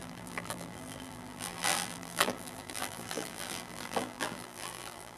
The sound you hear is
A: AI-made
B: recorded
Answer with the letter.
A